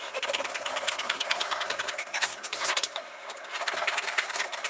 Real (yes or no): no